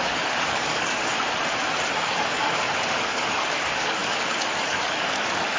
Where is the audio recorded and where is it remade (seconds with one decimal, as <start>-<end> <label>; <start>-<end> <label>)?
0.0-1.1 remade; 1.1-2.0 recorded; 2.0-5.6 remade